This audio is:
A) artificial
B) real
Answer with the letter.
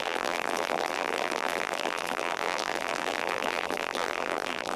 A